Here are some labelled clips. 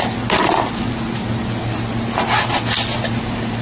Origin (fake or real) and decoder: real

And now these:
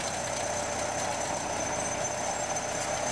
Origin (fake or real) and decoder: real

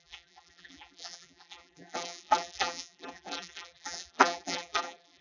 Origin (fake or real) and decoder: fake, vocoder, BigVGAN v2